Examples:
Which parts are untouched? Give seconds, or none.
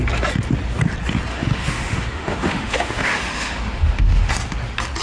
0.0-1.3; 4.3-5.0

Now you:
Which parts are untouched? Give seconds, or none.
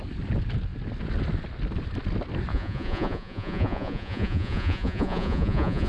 0.0-2.5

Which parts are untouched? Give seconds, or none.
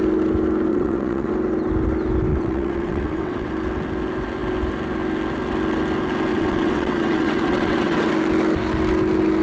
0.0-0.7; 1.3-2.3; 3.5-6.3; 8.1-9.4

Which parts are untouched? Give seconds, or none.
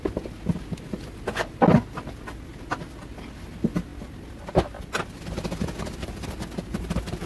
0.0-7.3